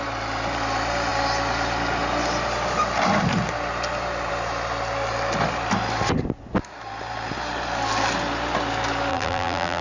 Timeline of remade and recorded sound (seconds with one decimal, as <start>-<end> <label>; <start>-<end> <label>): 0.0-9.1 recorded; 9.1-9.8 remade